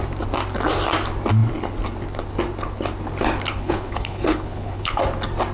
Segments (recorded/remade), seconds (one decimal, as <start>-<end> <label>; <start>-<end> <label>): 0.0-3.5 recorded; 3.5-5.0 remade; 5.0-5.5 recorded